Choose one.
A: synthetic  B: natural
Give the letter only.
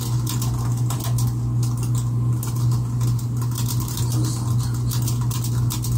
B